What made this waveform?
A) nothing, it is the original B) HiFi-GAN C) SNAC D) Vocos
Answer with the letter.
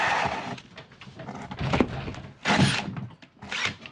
A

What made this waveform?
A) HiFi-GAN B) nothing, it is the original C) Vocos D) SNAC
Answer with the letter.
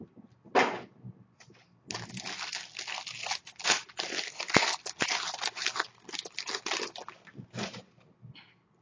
B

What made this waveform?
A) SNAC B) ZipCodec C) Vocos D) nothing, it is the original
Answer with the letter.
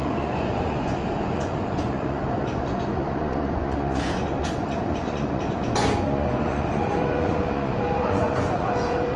C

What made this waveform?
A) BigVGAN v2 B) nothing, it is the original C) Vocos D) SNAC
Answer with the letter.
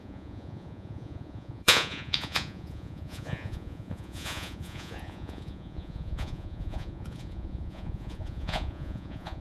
C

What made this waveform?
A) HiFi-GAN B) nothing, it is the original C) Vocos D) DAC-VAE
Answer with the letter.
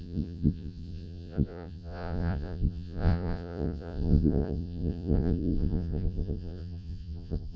C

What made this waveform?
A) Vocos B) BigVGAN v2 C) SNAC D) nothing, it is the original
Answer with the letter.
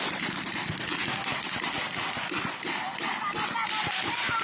D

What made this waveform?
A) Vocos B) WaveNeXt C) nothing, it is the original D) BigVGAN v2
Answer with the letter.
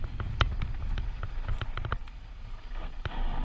C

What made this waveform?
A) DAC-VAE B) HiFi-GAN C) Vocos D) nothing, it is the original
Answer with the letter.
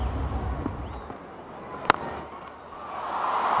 D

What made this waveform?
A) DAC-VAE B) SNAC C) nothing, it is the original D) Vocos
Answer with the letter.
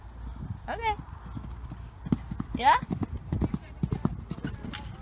C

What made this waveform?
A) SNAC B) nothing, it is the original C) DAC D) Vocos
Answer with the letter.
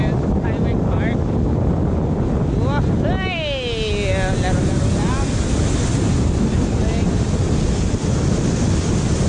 B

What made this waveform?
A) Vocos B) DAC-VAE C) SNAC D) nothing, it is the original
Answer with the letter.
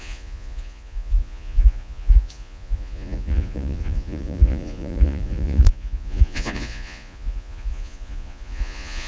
A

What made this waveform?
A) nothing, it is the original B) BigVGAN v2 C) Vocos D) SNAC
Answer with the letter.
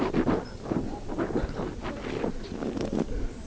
A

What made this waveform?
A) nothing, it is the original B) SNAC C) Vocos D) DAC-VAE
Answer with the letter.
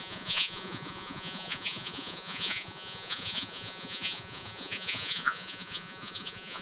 C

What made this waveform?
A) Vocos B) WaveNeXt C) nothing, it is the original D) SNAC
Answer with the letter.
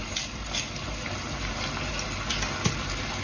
C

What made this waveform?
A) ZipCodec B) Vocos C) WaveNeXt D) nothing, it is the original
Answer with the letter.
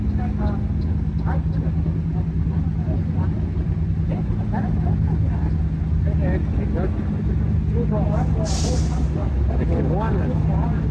D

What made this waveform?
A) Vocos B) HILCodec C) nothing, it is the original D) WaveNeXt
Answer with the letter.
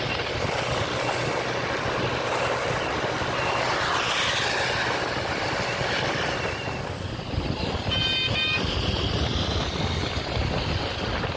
C